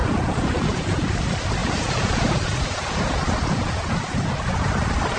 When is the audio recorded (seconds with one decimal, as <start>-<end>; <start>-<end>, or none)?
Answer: 1.2-1.6; 4.7-5.2